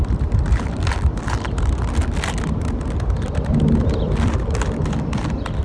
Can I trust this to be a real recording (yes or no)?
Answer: yes